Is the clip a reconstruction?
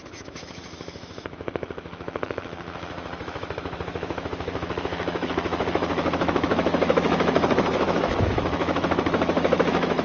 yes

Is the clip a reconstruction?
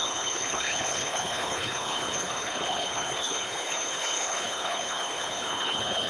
yes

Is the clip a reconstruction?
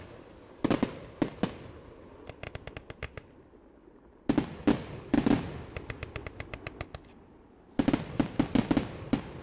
no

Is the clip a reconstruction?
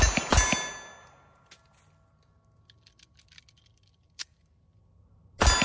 no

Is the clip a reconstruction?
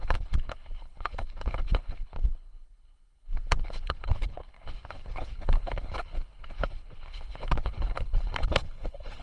yes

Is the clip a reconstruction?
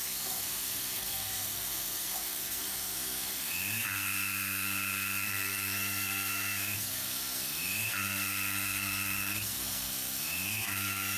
yes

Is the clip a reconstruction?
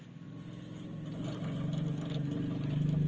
no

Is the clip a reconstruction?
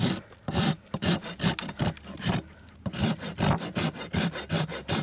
no